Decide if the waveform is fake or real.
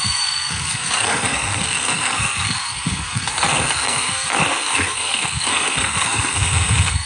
fake